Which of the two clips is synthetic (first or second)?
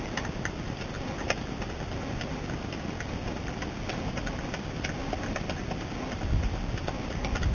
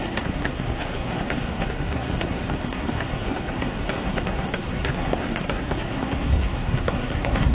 second